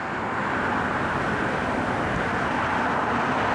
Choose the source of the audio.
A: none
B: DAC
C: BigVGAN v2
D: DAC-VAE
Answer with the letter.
A